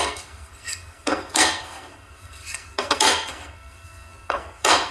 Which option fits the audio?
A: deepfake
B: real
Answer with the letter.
A